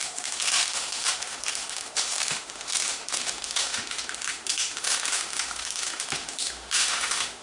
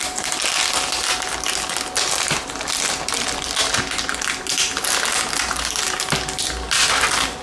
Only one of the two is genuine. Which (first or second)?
second